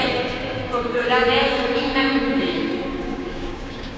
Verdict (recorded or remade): remade